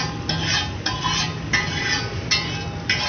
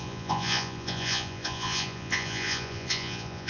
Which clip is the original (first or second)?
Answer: first